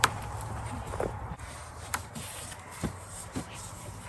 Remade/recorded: remade